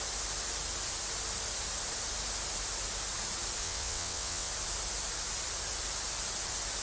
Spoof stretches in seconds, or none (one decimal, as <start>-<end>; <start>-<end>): 3.6-4.5